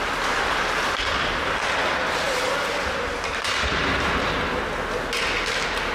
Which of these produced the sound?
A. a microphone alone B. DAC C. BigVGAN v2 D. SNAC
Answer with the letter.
A